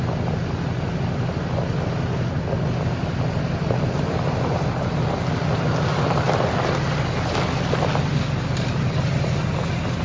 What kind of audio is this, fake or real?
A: real